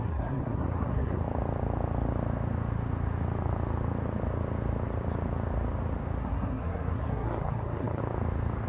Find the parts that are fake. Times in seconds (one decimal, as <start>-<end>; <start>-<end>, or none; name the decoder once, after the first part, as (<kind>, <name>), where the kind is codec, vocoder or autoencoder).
0.0-1.2 (codec, SNAC); 6.2-8.0